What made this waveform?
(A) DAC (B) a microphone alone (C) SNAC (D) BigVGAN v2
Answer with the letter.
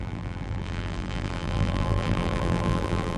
D